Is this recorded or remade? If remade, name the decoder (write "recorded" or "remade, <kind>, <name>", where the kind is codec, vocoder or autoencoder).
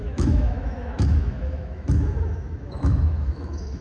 remade, autoencoder, DAC-VAE